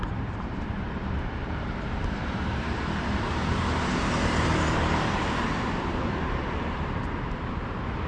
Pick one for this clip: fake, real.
fake